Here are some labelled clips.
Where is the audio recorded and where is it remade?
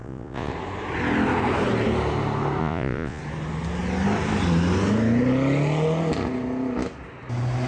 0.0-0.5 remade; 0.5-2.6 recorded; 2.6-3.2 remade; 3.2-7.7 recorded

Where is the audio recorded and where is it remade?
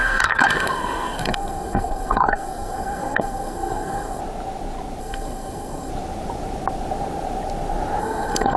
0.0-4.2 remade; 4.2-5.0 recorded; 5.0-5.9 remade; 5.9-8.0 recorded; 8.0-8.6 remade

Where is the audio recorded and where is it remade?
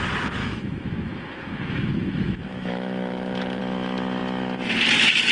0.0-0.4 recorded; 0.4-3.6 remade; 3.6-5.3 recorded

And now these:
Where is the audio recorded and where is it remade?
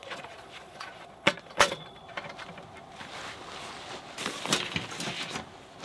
0.0-2.0 remade; 2.0-5.8 recorded